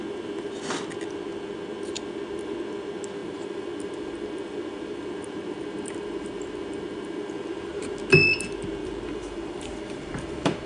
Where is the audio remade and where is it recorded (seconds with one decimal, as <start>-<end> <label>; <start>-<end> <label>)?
0.0-3.2 recorded; 3.2-8.0 remade; 8.0-8.8 recorded; 8.8-10.7 remade